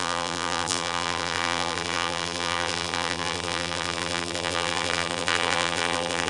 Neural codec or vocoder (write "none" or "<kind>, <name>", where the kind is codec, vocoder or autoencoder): vocoder, BigVGAN v2